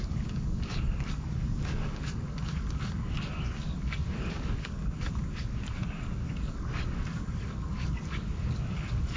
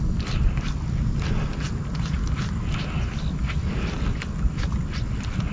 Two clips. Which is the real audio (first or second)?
second